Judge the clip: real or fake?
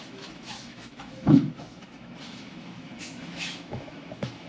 fake